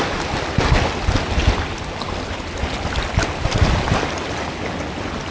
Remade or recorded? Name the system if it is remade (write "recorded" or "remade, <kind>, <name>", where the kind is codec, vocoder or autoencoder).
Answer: recorded